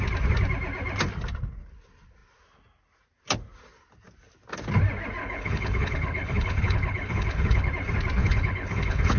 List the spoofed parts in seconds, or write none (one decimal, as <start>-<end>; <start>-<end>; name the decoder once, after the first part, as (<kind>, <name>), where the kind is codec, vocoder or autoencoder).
5.2-7.7 (codec, HILCodec); 8.2-9.2